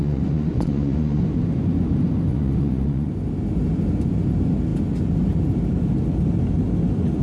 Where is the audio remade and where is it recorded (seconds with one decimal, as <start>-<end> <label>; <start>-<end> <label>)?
0.0-1.2 remade; 1.2-2.3 recorded; 2.3-3.1 remade; 3.1-7.2 recorded